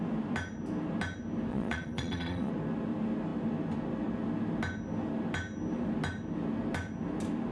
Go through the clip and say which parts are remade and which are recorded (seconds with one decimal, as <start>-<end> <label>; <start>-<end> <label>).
0.0-1.5 recorded; 1.5-2.5 remade; 2.5-7.5 recorded